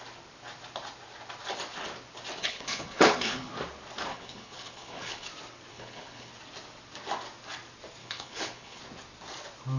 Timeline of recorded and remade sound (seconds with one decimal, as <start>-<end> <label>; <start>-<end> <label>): 0.0-2.4 recorded; 2.4-3.5 remade; 3.5-4.1 recorded; 4.1-5.3 remade; 5.3-5.7 recorded; 5.7-6.3 remade; 6.3-8.0 recorded; 8.0-8.8 remade; 8.8-9.8 recorded